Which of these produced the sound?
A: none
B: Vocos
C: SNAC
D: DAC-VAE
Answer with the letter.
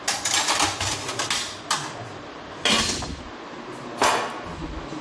A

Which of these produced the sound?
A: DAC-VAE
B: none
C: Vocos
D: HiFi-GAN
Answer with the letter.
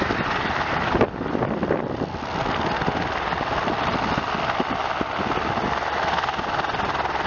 B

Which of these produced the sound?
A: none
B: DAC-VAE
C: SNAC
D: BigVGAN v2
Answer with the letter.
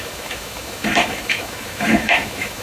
B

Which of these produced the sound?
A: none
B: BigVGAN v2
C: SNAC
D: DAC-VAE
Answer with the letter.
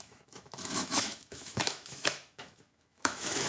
D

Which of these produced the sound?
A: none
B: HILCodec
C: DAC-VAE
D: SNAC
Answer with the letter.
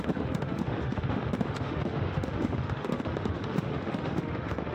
C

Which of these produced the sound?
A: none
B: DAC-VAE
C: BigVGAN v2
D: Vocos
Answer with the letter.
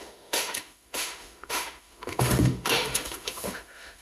B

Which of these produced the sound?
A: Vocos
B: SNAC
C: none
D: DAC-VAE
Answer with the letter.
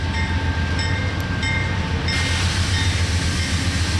C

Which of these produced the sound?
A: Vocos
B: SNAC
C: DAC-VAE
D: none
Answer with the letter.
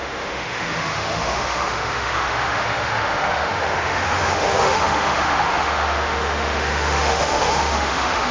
C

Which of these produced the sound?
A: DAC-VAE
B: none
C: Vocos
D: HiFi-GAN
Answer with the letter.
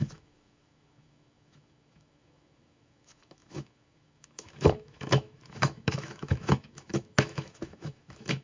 A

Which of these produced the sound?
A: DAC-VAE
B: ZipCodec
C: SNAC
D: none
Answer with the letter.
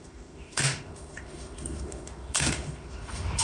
A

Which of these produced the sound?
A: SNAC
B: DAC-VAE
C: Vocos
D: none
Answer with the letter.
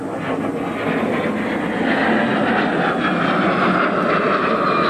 D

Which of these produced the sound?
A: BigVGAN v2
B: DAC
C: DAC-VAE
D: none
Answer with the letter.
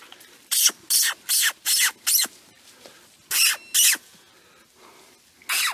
D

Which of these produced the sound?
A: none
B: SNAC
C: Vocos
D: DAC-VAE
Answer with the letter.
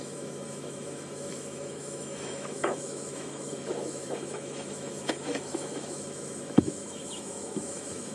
D